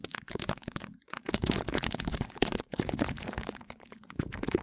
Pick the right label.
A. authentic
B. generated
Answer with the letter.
B